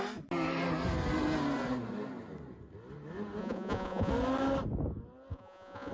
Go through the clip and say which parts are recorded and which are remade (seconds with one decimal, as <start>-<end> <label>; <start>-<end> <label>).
0.0-3.4 recorded; 3.4-4.1 remade; 4.1-5.3 recorded; 5.3-5.9 remade